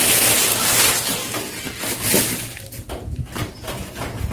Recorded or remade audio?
recorded